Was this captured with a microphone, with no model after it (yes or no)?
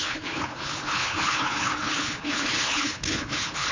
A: no